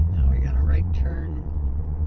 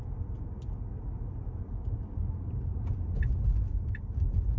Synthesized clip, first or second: first